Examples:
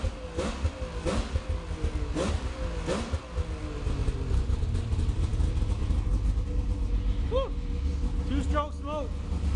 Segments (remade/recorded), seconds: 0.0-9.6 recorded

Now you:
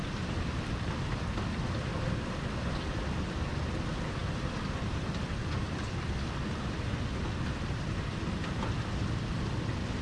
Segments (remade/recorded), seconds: 0.0-10.0 recorded

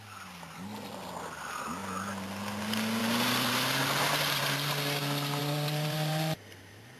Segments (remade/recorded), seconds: 0.0-3.0 recorded; 3.0-3.8 remade; 3.8-5.4 recorded; 5.4-7.0 remade